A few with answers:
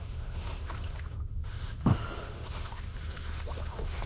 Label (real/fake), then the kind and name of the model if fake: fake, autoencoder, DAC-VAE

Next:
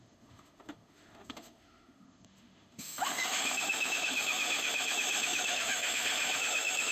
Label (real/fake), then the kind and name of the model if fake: fake, autoencoder, DAC-VAE